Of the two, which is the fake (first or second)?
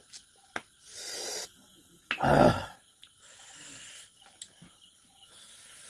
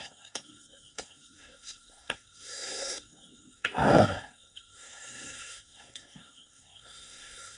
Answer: second